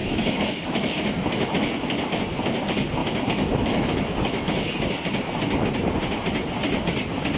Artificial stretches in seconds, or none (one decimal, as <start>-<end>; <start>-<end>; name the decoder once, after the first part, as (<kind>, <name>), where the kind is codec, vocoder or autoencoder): 0.0-2.2 (autoencoder, DAC-VAE); 3.0-4.7